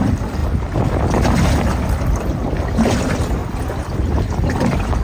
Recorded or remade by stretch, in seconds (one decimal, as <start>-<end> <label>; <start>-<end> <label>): 0.0-5.0 recorded